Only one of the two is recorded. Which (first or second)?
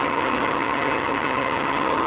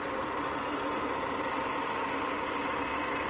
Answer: second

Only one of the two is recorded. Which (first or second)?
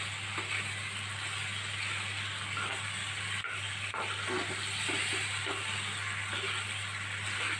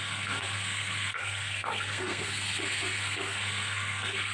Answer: first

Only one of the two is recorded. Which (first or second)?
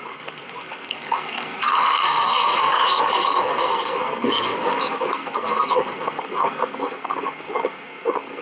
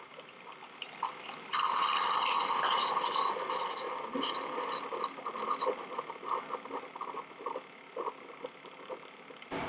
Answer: second